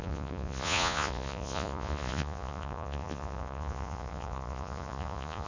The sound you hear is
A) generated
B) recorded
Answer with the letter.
A